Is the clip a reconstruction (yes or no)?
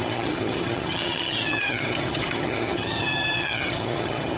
yes